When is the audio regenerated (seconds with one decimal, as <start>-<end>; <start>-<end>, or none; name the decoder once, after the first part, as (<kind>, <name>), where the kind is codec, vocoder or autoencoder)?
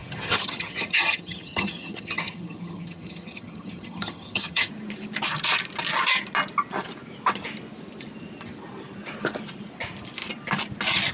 0.0-4.7 (vocoder, HiFi-GAN)